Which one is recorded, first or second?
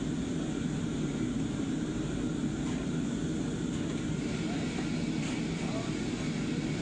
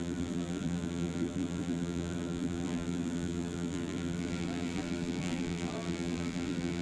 first